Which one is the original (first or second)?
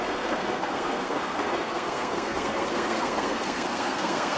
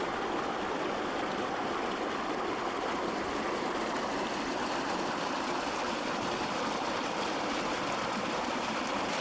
second